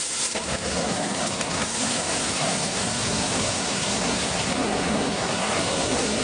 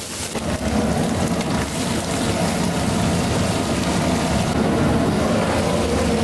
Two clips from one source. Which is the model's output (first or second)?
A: first